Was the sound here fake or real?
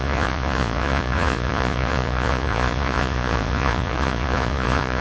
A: fake